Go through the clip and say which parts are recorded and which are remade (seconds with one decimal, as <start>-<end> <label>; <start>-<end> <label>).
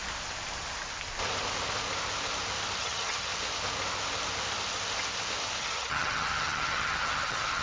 0.0-2.8 recorded; 2.8-3.3 remade; 3.3-5.6 recorded; 5.6-7.6 remade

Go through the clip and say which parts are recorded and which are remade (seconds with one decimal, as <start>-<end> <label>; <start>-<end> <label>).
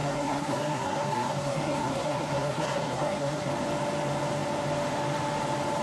0.0-3.5 remade; 3.5-5.8 recorded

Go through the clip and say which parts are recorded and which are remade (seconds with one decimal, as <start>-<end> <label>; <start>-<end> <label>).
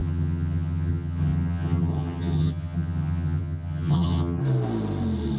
0.0-4.4 remade; 4.4-5.4 recorded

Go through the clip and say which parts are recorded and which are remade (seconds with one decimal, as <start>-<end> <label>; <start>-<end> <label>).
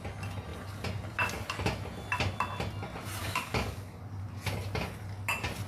0.0-3.2 recorded; 3.2-4.0 remade; 4.0-5.7 recorded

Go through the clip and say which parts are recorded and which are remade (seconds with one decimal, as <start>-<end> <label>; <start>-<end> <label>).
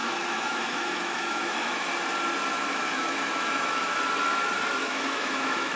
0.0-1.9 remade; 1.9-2.5 recorded; 2.5-4.0 remade; 4.0-4.8 recorded; 4.8-5.8 remade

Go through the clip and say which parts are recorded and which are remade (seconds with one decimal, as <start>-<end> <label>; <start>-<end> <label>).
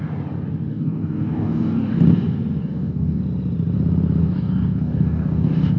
0.0-0.7 recorded; 0.7-2.0 remade; 2.0-2.6 recorded; 2.6-3.2 remade; 3.2-4.2 recorded; 4.2-5.8 remade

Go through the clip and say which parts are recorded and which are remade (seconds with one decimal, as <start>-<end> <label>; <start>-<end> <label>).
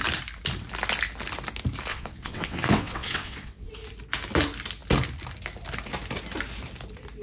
0.0-1.9 recorded; 1.9-3.7 remade; 3.7-7.2 recorded